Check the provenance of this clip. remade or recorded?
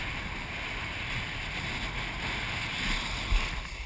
recorded